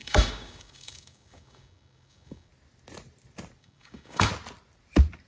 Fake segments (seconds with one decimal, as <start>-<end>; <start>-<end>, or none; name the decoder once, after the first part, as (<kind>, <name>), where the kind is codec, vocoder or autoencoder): 0.0-2.5 (codec, DAC); 3.6-4.3